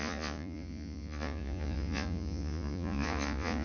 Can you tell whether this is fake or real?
fake